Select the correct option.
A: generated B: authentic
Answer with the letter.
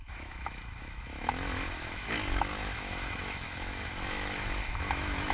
A